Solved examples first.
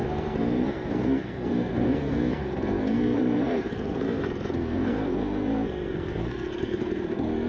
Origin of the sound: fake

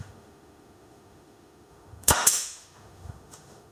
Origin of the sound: fake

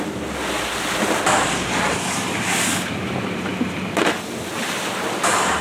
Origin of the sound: real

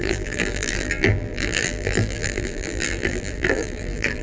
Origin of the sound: fake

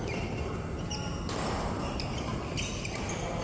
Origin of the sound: real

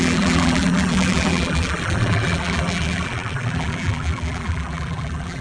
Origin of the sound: fake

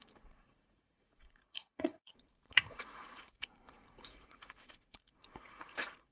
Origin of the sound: fake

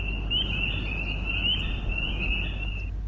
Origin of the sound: real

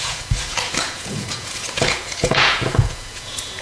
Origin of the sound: fake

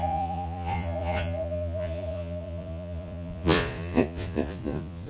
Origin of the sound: fake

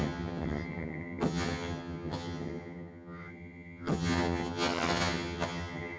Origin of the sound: fake